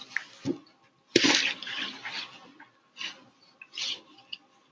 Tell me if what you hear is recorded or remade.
recorded